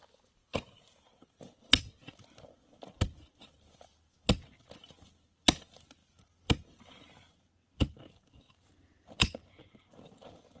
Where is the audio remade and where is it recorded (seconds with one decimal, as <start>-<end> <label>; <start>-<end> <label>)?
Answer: 0.0-10.6 recorded